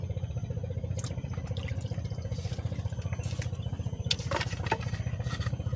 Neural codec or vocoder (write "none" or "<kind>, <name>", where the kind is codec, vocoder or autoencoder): none